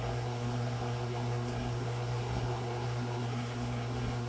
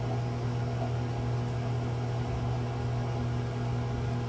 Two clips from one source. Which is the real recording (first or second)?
second